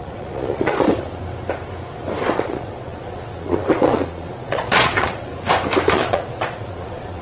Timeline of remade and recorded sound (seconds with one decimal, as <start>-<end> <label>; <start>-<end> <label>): 0.0-1.2 remade; 1.2-2.3 recorded; 2.3-5.3 remade; 5.3-5.9 recorded; 5.9-7.2 remade